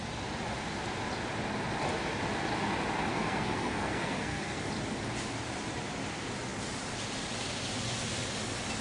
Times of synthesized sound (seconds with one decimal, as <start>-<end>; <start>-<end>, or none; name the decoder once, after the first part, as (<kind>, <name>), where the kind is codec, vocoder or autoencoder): 3.1-4.6 (codec, SNAC)